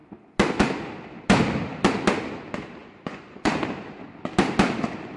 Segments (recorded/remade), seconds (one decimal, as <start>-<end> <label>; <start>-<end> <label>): 0.0-2.8 recorded; 2.8-3.5 remade; 3.5-5.2 recorded